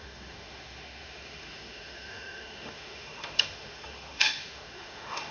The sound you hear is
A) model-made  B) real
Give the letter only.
A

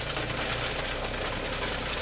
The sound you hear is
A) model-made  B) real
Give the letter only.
B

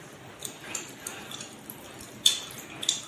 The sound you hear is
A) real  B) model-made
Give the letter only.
A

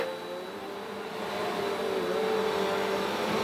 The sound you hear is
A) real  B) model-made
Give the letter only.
A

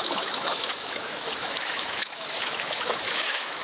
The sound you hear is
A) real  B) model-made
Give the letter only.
B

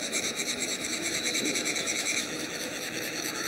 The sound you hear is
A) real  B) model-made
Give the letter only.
B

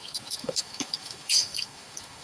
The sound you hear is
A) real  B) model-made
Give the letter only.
B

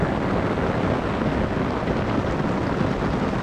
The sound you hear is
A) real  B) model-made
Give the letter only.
A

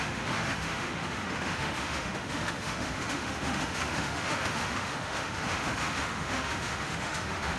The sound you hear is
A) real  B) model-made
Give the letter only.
B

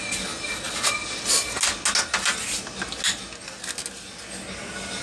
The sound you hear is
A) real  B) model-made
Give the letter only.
A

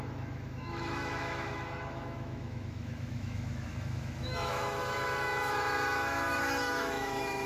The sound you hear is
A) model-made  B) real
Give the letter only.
A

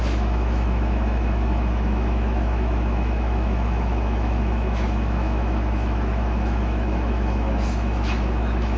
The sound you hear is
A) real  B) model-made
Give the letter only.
B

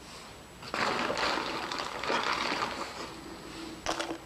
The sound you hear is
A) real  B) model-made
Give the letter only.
A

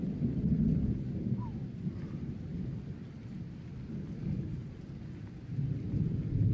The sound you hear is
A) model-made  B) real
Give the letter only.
B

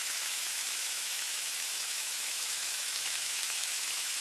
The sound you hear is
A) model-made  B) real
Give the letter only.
A